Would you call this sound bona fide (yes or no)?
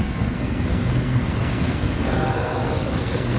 no